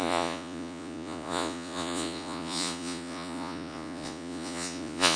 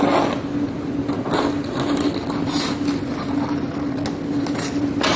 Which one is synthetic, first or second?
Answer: first